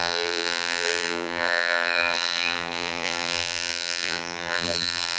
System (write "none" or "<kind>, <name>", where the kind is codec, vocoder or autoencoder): vocoder, BigVGAN v2